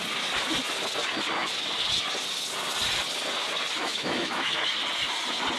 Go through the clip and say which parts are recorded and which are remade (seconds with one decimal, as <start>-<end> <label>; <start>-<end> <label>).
0.0-3.8 recorded; 3.8-4.7 remade; 4.7-5.6 recorded

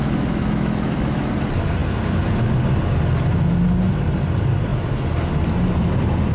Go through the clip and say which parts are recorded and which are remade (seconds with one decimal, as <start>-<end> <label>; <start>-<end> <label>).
0.0-1.3 remade; 1.3-6.3 recorded